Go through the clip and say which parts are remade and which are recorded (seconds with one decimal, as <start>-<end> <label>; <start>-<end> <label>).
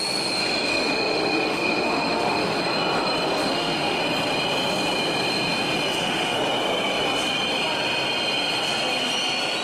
0.0-0.7 recorded; 0.7-2.6 remade; 2.6-3.4 recorded; 3.4-4.0 remade; 4.0-5.9 recorded; 5.9-6.4 remade; 6.4-9.6 recorded